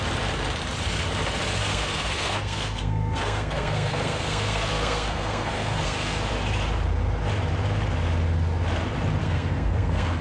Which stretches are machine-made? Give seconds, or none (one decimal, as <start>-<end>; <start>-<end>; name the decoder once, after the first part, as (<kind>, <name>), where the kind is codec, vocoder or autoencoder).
1.6-6.2 (codec, SNAC); 9.2-10.2